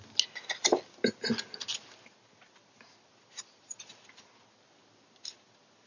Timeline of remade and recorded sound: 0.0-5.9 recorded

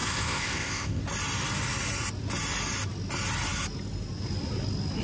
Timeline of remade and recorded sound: 0.0-1.0 remade; 1.0-5.0 recorded

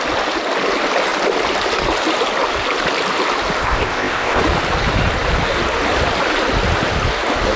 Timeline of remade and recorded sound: 0.0-3.6 recorded; 3.6-4.4 remade; 4.4-7.6 recorded

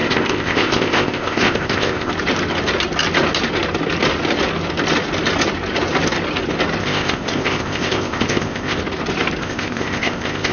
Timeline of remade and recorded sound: 0.0-2.1 remade; 2.1-6.8 recorded; 6.8-8.8 remade; 8.8-9.4 recorded; 9.4-10.5 remade

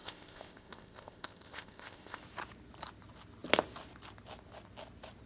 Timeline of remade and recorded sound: 0.0-2.2 remade; 2.2-5.3 recorded

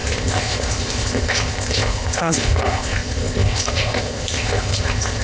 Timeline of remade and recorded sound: 0.0-5.2 remade

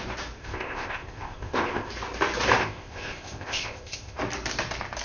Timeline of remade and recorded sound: 0.0-0.4 recorded; 0.4-1.9 remade; 1.9-2.6 recorded; 2.6-4.2 remade; 4.2-5.0 recorded